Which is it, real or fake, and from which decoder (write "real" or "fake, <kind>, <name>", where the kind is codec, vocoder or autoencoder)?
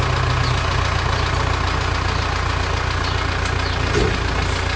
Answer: real